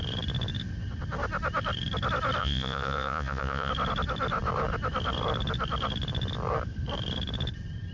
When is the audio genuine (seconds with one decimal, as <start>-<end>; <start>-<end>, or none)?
0.0-2.4; 3.7-7.9